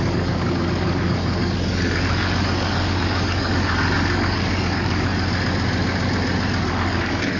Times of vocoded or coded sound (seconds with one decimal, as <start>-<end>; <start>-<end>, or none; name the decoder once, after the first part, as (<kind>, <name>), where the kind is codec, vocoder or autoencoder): 0.0-5.1 (codec, DAC); 6.7-7.4

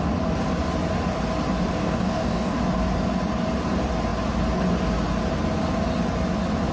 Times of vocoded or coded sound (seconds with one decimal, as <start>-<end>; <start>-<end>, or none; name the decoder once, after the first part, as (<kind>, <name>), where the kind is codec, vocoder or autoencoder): 1.8-2.6 (codec, DAC)

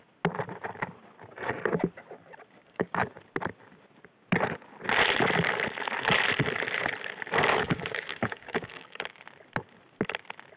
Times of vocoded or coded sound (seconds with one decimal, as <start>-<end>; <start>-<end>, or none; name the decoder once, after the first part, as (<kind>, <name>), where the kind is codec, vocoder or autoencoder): 2.6-3.2 (codec, DAC); 7.5-9.2

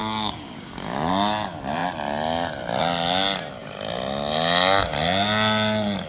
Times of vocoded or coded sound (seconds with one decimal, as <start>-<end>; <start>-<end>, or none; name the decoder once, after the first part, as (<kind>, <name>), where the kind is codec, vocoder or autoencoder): 0.0-1.1 (codec, DAC)

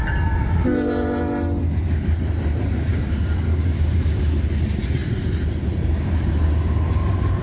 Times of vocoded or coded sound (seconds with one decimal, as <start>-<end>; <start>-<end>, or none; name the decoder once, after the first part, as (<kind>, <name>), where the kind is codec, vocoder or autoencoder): 2.9-4.3 (codec, DAC)